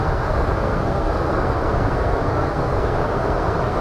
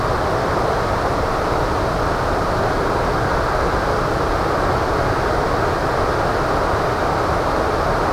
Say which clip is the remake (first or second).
first